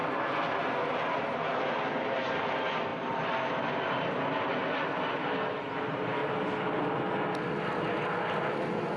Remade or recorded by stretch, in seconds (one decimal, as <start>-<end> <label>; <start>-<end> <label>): 0.0-1.3 remade; 1.3-2.9 recorded; 2.9-3.5 remade; 3.5-9.0 recorded